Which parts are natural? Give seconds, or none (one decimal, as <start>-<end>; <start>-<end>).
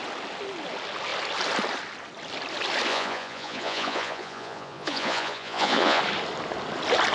0.0-2.9; 6.0-7.1